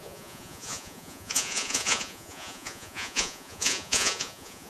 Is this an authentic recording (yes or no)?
no